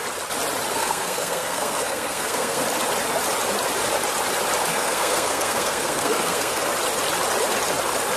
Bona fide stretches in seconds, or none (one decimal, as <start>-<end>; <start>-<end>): 0.0-0.7; 2.6-4.7; 6.7-8.2